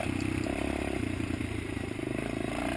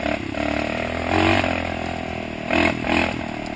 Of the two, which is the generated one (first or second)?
first